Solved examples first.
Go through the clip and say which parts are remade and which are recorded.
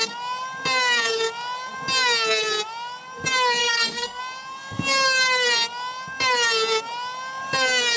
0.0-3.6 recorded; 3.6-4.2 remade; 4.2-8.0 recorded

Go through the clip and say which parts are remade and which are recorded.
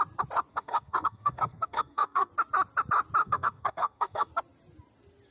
0.0-0.5 recorded; 0.5-2.3 remade; 2.3-3.2 recorded; 3.2-4.3 remade; 4.3-5.3 recorded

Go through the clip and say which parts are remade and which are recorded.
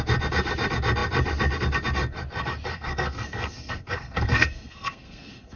0.0-2.7 recorded; 2.7-5.6 remade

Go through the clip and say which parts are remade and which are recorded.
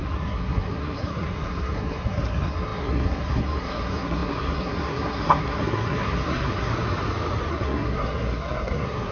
0.0-6.7 remade; 6.7-7.5 recorded; 7.5-9.1 remade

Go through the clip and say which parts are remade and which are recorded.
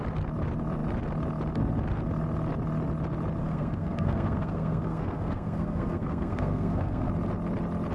0.0-3.4 recorded; 3.4-7.1 remade; 7.1-7.9 recorded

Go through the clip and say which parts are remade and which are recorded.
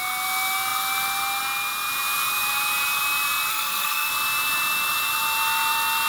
0.0-3.5 recorded; 3.5-4.1 remade; 4.1-6.1 recorded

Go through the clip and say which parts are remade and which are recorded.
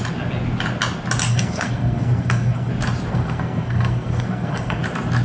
0.0-1.3 recorded; 1.3-2.7 remade; 2.7-3.1 recorded; 3.1-4.8 remade; 4.8-5.2 recorded